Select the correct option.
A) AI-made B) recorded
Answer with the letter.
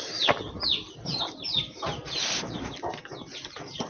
B